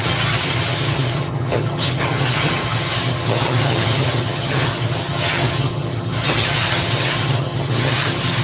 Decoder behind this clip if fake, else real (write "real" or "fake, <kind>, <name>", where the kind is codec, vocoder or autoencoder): fake, vocoder, HiFi-GAN